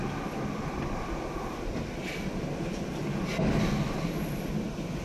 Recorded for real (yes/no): yes